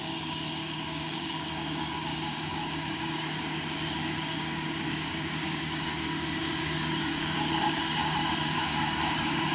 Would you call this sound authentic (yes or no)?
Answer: no